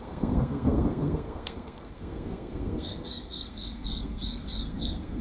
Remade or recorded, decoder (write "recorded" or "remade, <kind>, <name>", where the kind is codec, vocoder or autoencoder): remade, codec, SNAC